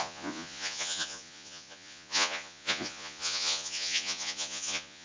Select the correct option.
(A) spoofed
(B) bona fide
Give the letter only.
A